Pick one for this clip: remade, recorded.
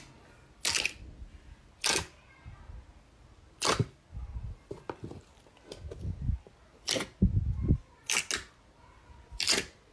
recorded